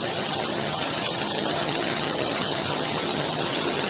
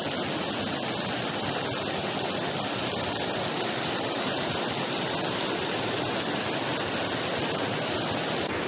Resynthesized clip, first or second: first